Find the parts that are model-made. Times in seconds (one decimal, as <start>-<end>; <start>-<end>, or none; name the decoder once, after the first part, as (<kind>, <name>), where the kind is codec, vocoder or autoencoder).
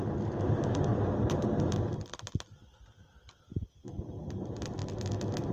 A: 0.0-0.9 (vocoder, BigVGAN v2); 4.2-4.8